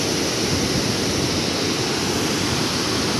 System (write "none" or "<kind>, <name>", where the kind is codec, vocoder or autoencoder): none